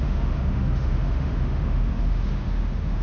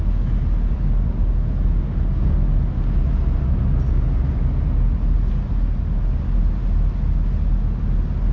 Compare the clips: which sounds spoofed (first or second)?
first